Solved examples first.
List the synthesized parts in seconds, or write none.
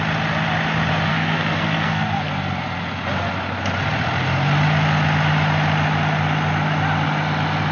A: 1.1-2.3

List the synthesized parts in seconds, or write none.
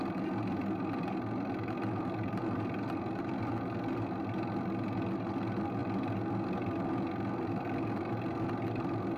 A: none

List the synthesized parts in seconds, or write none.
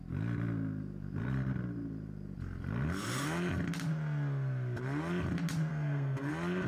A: 5.7-6.3